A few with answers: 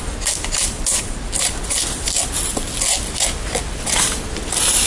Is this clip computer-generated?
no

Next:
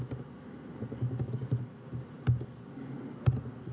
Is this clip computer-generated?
no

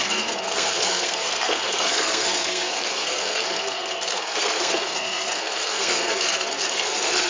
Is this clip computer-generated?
yes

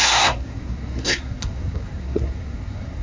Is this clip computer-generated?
yes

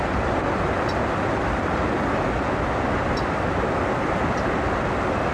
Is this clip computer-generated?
no